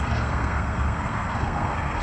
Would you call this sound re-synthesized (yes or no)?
yes